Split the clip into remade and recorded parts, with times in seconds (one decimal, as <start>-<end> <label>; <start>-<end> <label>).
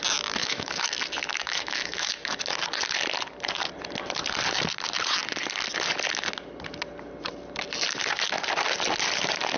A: 0.0-0.4 recorded; 0.4-1.0 remade; 1.0-1.4 recorded; 1.4-2.1 remade; 2.1-9.6 recorded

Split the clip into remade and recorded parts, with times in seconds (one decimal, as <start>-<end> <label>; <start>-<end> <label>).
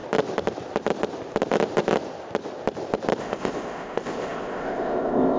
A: 0.0-3.2 recorded; 3.2-5.4 remade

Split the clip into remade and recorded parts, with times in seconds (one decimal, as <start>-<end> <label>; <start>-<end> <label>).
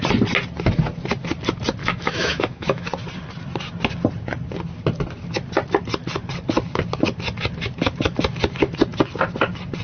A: 0.0-1.8 recorded; 1.8-2.9 remade; 2.9-9.8 recorded